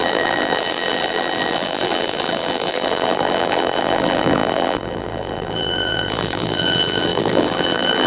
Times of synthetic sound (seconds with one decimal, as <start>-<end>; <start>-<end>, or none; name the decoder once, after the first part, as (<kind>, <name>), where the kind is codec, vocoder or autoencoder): 0.0-8.1 (vocoder, BigVGAN v2)